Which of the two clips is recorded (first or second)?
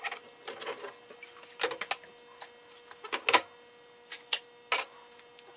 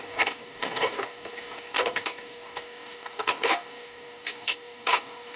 first